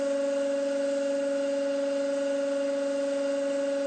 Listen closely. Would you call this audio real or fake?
real